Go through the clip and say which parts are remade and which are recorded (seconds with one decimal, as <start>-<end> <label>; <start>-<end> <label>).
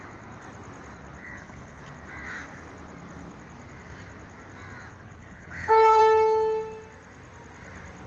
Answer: 0.0-1.2 recorded; 1.2-1.8 remade; 1.8-4.9 recorded; 4.9-6.0 remade; 6.0-8.1 recorded